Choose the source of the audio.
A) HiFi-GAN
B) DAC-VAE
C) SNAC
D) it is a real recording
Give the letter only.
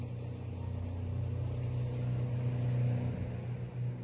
D